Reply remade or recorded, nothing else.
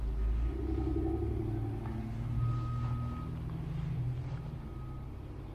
recorded